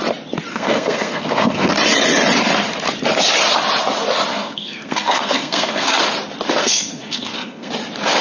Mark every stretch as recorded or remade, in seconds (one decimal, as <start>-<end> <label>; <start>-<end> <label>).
0.0-0.5 recorded; 0.5-1.7 remade; 1.7-4.3 recorded; 4.3-6.0 remade; 6.0-6.6 recorded; 6.6-7.7 remade; 7.7-8.2 recorded